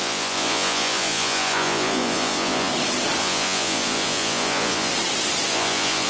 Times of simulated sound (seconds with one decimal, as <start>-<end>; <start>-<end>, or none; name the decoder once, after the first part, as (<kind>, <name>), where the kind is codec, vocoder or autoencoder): 0.0-2.7 (vocoder, Vocos); 3.2-4.9; 5.5-6.1